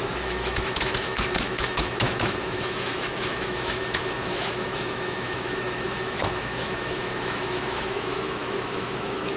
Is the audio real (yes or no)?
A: no